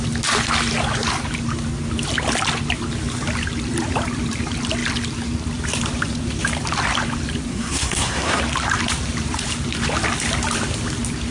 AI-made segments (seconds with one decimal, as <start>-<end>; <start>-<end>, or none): 7.5-8.4